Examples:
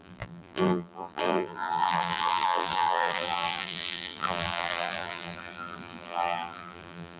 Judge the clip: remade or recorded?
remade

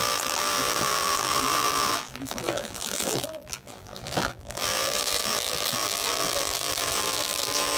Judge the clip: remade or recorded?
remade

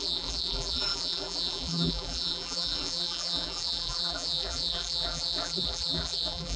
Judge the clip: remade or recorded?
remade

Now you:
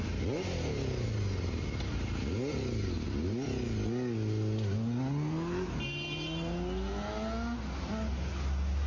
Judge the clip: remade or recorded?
recorded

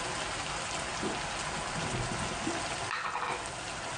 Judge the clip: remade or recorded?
recorded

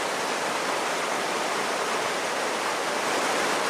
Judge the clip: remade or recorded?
recorded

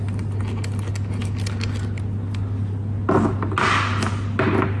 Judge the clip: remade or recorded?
recorded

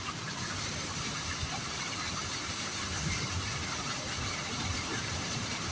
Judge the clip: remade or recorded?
remade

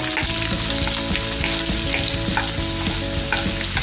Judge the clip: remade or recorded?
recorded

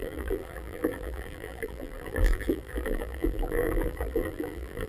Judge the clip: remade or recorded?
remade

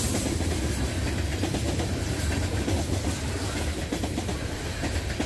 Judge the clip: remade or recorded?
recorded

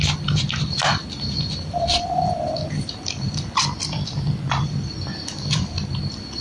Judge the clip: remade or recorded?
remade